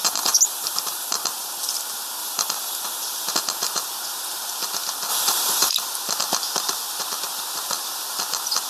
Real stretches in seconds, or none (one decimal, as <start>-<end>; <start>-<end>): 1.1-2.2; 3.3-5.1; 5.7-8.7